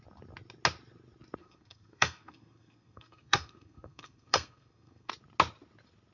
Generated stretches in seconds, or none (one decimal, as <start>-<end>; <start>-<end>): 1.4-5.1